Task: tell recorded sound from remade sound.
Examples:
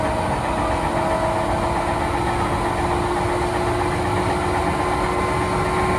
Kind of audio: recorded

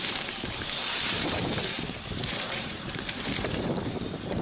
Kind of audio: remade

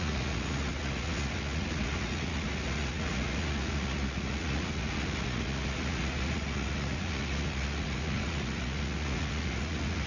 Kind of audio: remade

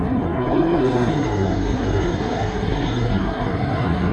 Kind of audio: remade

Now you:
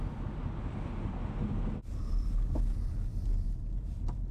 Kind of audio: recorded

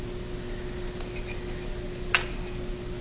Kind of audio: recorded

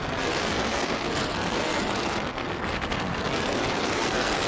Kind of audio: remade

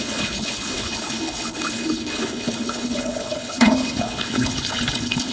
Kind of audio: remade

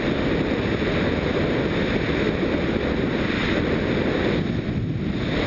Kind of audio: recorded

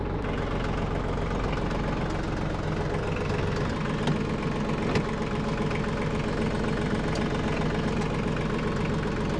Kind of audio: recorded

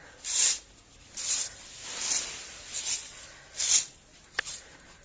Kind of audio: recorded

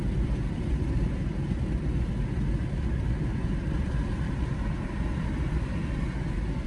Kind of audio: recorded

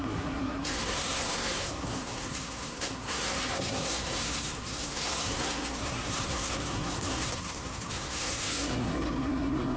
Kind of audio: remade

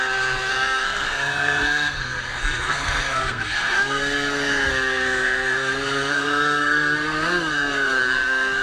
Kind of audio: remade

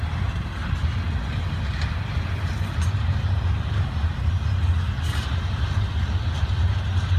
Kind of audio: recorded